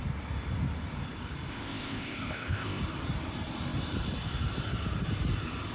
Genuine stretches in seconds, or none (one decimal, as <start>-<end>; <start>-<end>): 0.0-1.5; 2.8-5.7